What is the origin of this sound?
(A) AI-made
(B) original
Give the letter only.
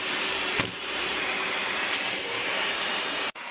A